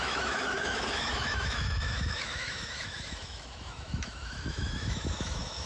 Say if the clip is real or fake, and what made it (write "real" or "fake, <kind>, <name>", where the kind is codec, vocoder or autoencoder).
fake, autoencoder, DAC-VAE